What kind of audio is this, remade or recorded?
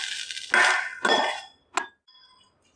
recorded